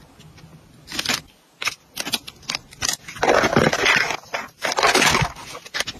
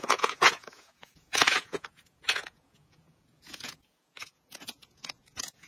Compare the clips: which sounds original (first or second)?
first